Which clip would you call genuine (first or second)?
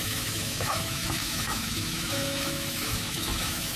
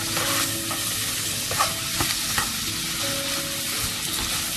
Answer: second